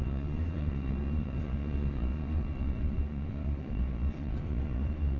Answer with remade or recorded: remade